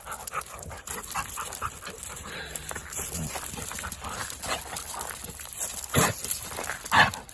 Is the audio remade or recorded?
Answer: recorded